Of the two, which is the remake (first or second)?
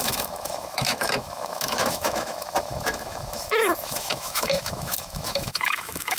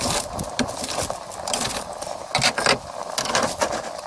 first